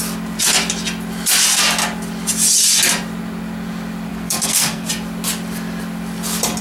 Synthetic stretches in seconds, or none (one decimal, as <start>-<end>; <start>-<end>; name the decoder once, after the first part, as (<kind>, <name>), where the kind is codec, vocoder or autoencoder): 4.1-4.9 (codec, SNAC)